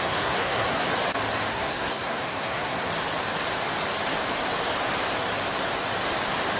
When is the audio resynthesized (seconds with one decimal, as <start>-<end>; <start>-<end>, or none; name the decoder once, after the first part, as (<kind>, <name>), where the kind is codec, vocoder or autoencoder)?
0.0-0.9 (codec, SNAC); 1.5-2.9